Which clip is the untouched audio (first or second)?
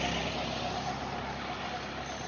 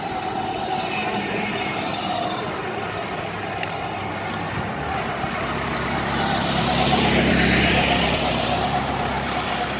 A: first